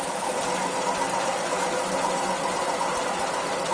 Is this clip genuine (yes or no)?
yes